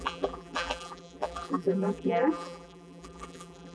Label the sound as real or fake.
fake